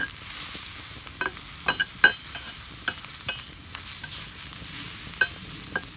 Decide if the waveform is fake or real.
real